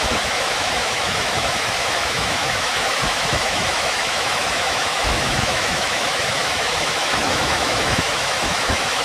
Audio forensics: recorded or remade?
remade